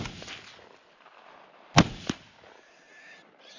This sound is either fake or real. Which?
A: real